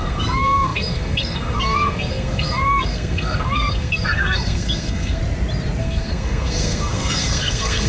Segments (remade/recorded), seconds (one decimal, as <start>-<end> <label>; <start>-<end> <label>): 0.0-5.2 remade; 5.2-5.8 recorded; 5.8-7.9 remade